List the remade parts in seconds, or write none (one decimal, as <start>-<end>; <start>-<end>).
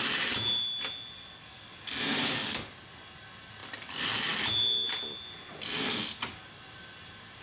none